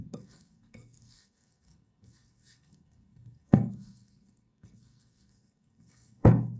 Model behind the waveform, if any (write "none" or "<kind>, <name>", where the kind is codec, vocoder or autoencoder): codec, SNAC